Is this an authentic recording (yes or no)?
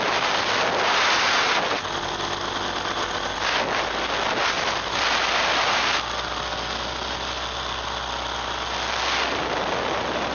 yes